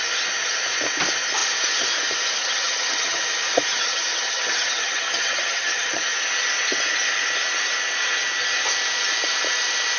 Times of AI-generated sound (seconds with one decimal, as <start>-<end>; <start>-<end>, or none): 2.4-3.2; 3.7-6.0